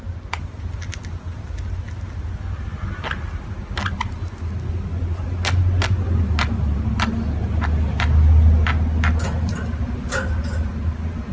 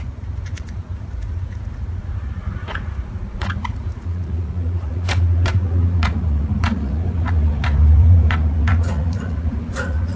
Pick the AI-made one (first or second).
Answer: second